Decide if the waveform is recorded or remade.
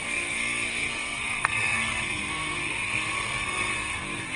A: remade